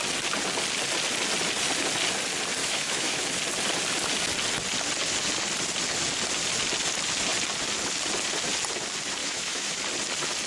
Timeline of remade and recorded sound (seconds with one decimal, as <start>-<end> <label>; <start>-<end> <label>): 0.0-2.6 recorded; 2.6-3.2 remade; 3.2-9.2 recorded; 9.2-9.8 remade; 9.8-10.5 recorded